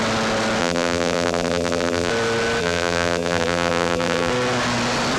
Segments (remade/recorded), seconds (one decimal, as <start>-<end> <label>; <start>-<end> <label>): 0.0-0.6 recorded; 0.6-2.1 remade; 2.1-2.6 recorded; 2.6-4.3 remade; 4.3-5.2 recorded